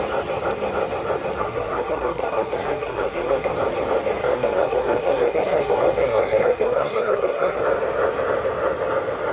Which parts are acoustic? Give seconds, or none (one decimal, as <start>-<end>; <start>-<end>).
0.0-1.4; 3.5-4.2; 7.6-9.3